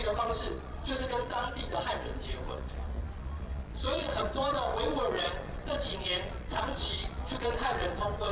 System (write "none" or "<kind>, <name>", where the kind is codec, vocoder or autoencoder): vocoder, Vocos